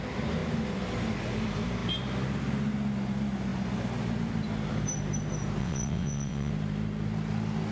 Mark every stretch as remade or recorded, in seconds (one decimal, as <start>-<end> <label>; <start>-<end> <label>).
0.0-5.6 recorded; 5.6-6.5 remade; 6.5-7.7 recorded